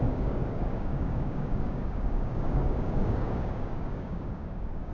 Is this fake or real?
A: fake